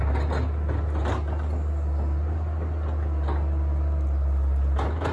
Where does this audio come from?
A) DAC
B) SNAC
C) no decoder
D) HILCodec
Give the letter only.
C